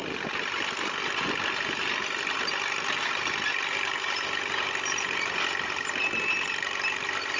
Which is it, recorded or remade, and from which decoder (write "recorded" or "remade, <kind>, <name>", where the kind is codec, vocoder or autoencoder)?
recorded